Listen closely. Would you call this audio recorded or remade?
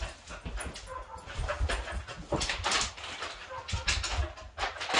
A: recorded